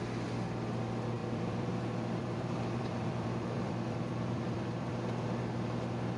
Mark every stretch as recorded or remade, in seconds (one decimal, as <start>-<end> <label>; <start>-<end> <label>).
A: 0.0-1.2 recorded; 1.2-4.9 remade; 4.9-6.2 recorded